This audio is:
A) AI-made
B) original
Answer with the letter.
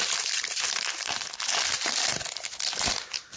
B